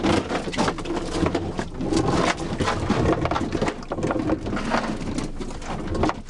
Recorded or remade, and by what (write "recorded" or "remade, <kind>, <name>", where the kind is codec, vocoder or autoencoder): recorded